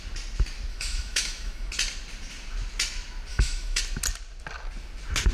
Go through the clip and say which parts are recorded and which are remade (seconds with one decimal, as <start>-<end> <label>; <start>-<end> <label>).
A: 0.0-0.7 recorded; 0.7-1.7 remade; 1.7-3.3 recorded; 3.3-3.8 remade; 3.8-5.3 recorded